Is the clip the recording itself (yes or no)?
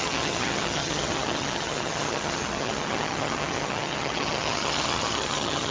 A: no